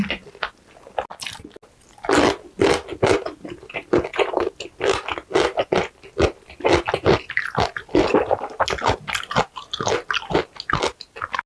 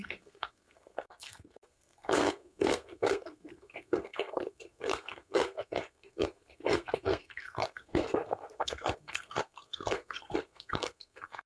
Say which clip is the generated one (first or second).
second